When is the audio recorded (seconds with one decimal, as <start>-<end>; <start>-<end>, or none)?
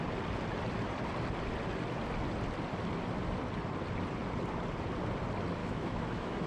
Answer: 0.0-5.6